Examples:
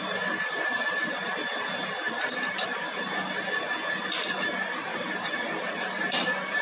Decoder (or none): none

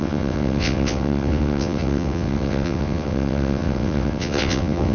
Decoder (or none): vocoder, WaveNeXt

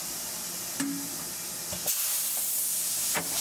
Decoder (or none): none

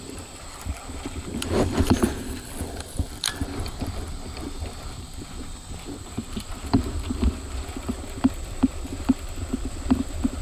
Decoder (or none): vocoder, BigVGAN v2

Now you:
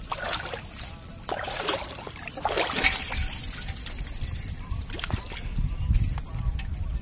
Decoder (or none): none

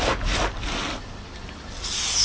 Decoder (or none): none